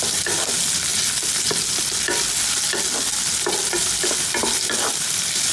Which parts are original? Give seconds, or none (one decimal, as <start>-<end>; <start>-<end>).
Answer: 0.0-5.5